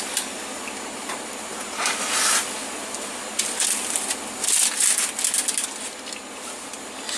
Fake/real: real